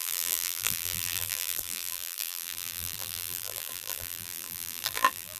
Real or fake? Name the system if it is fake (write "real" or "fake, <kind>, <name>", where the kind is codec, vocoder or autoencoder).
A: fake, vocoder, BigVGAN v2